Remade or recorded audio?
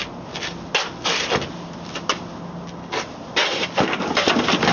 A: recorded